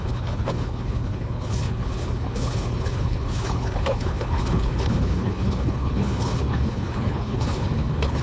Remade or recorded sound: remade